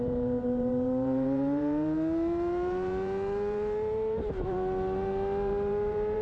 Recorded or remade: remade